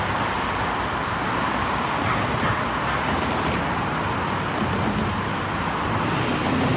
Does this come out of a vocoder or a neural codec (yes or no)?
no